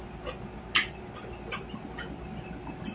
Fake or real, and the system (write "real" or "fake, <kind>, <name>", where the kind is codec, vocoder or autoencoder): real